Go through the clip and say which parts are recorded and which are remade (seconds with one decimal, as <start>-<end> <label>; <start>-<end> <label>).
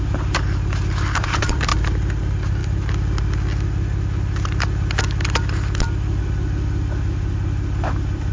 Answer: 0.0-1.7 remade; 1.7-2.2 recorded; 2.2-2.6 remade; 2.6-6.2 recorded; 6.2-8.3 remade